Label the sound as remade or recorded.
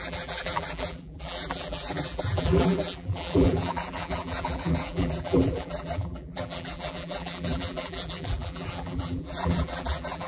remade